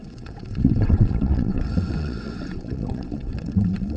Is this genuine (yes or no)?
no